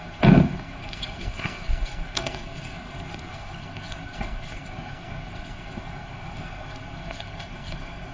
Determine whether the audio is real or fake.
fake